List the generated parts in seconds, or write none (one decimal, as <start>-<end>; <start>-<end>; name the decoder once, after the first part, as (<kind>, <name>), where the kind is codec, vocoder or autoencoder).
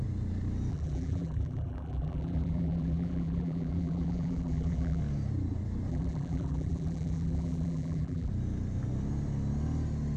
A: 0.7-5.0 (vocoder, BigVGAN v2); 5.9-8.3